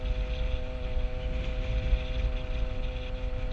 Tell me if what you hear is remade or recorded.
recorded